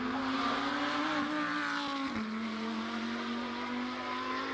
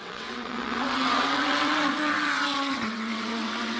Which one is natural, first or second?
first